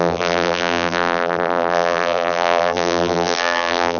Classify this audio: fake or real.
fake